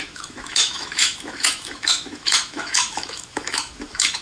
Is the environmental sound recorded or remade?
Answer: remade